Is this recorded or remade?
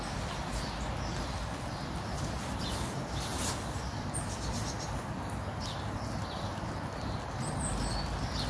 recorded